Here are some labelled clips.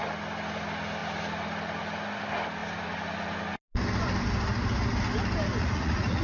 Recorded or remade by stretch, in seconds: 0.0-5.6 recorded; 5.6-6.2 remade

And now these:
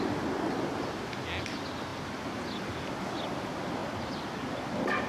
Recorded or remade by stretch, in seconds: 0.0-5.1 recorded

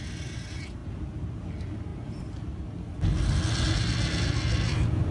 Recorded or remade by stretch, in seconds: 0.0-5.1 recorded

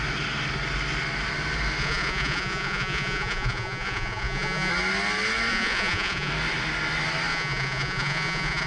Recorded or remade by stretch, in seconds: 0.0-1.8 recorded; 1.8-4.7 remade; 4.7-5.5 recorded; 5.5-6.3 remade; 6.3-7.3 recorded; 7.3-8.7 remade